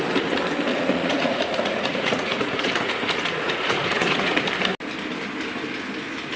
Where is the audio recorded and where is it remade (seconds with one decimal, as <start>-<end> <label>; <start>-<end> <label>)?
0.0-0.7 recorded; 0.7-4.5 remade; 4.5-6.4 recorded